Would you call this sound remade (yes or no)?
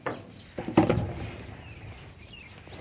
no